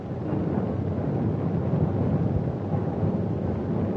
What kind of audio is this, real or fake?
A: real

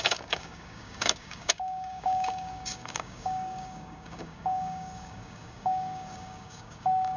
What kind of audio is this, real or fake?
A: fake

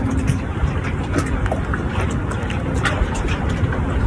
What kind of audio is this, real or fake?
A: real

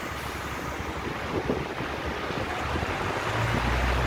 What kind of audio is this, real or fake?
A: real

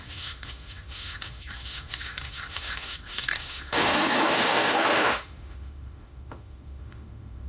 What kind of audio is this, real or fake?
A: fake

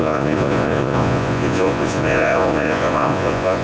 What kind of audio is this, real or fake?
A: fake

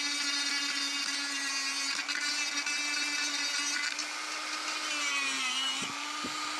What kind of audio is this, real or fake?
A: real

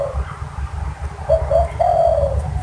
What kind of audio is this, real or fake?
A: real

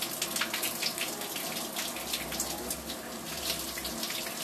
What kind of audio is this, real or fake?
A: real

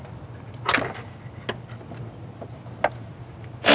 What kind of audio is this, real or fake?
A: real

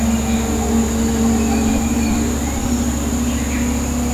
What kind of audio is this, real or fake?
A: fake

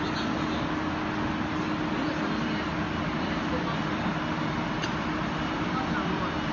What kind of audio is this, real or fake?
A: real